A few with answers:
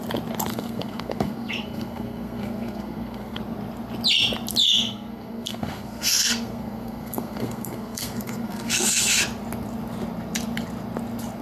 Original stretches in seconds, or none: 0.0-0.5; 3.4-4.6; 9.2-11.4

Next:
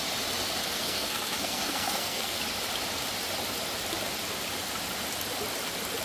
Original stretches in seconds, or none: 0.0-0.6; 2.4-6.0

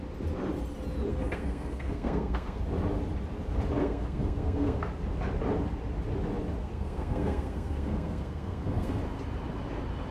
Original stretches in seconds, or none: 0.0-1.1; 2.6-3.8; 4.9-6.6; 9.0-10.1

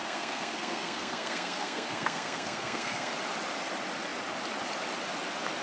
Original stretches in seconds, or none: 3.1-5.6

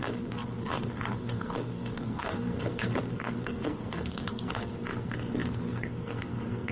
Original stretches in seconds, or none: none